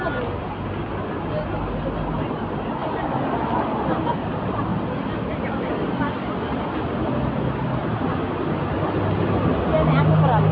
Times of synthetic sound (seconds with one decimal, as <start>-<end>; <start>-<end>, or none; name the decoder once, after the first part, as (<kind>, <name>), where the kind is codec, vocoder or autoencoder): none